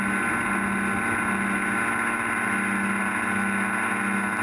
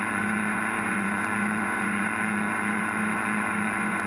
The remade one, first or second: second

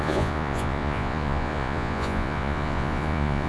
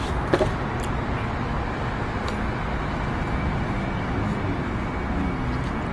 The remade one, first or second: first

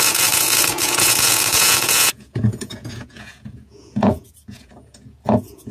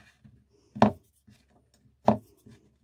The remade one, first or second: first